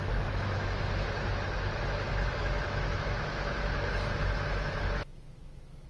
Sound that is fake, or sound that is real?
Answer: fake